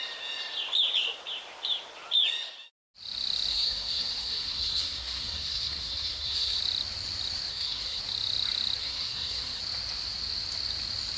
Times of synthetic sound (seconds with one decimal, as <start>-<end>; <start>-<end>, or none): 3.5-6.6; 7.5-8.0; 8.8-9.6